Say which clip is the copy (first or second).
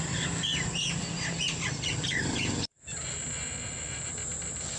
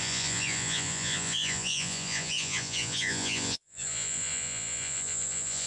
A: second